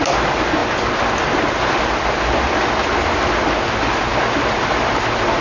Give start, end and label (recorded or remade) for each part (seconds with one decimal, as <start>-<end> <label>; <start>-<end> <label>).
0.0-5.4 recorded